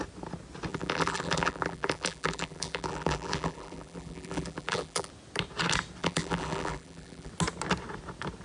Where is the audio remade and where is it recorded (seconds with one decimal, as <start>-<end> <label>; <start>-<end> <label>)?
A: 0.0-0.7 recorded; 0.7-5.1 remade; 5.1-6.0 recorded; 6.0-7.3 remade; 7.3-8.4 recorded